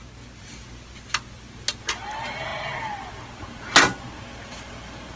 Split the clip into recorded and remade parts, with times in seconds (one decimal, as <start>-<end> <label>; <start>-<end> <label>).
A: 0.0-5.2 recorded

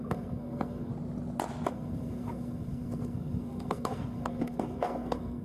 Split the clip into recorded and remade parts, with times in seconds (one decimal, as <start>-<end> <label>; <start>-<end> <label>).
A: 0.0-0.9 remade; 0.9-1.7 recorded; 1.7-5.4 remade

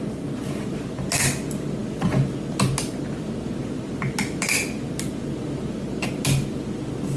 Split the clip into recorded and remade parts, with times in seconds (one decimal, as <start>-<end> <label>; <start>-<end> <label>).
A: 0.0-7.2 recorded

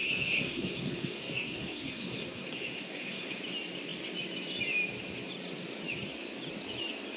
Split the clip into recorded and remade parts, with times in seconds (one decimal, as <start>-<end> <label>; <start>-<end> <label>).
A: 0.0-3.4 remade; 3.4-7.2 recorded

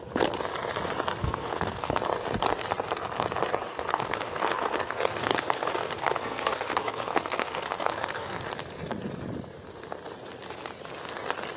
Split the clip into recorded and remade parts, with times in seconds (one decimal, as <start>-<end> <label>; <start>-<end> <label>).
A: 0.0-1.2 recorded; 1.2-2.0 remade; 2.0-3.7 recorded; 3.7-8.4 remade; 8.4-11.6 recorded

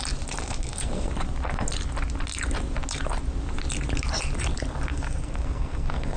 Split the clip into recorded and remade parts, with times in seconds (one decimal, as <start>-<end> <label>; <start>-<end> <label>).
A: 0.0-0.4 recorded; 0.4-1.1 remade; 1.1-4.9 recorded; 4.9-6.2 remade